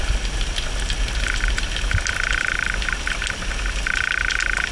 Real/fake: real